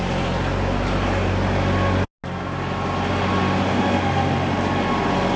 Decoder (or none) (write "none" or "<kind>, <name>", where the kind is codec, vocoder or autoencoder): none